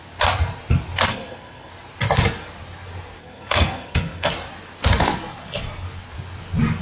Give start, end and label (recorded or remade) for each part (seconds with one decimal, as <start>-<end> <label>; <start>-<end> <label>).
0.0-1.1 recorded; 1.1-1.7 remade; 1.7-3.2 recorded; 3.2-4.3 remade; 4.3-6.8 recorded